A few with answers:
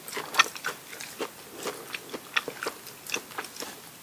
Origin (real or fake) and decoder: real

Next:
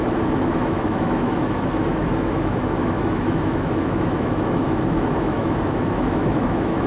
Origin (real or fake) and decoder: fake, autoencoder, DAC-VAE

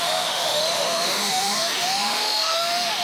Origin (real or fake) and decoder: fake, autoencoder, DAC-VAE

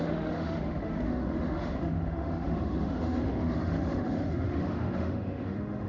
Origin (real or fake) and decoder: fake, autoencoder, DAC-VAE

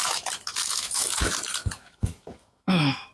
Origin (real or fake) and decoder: fake, autoencoder, DAC-VAE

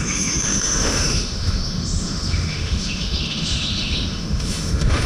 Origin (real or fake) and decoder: fake, autoencoder, DAC-VAE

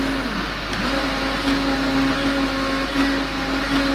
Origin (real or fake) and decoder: real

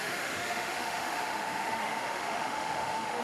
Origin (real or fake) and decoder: fake, autoencoder, DAC-VAE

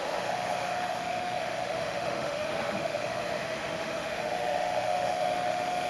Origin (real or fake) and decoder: fake, autoencoder, DAC-VAE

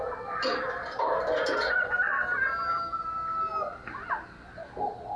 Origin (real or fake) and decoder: real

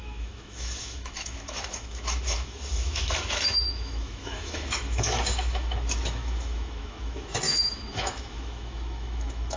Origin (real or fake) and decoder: fake, autoencoder, DAC-VAE